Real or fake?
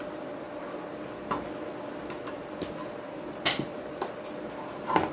real